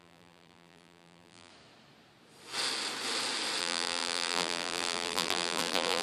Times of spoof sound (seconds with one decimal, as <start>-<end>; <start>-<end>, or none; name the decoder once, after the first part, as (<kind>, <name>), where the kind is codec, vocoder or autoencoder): 0.0-1.5 (vocoder, BigVGAN v2); 3.6-6.0